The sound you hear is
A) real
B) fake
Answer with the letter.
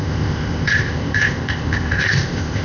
B